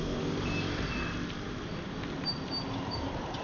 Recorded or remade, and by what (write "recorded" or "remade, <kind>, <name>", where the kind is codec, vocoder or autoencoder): recorded